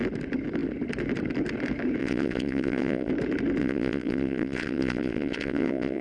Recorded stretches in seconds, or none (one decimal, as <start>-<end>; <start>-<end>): 0.0-2.0; 3.1-3.6